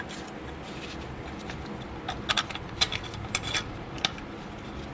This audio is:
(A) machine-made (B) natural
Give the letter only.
B